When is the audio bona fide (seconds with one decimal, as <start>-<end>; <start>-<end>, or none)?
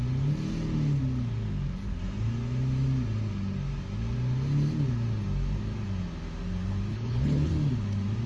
0.0-6.9; 7.5-8.3